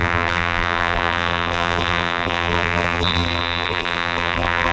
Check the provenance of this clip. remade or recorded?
remade